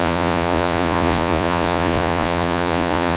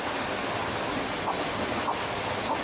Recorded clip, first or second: second